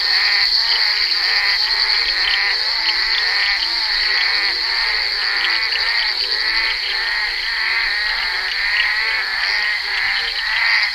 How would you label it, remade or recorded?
recorded